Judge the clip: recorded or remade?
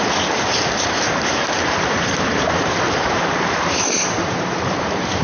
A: remade